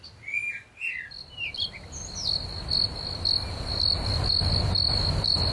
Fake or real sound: real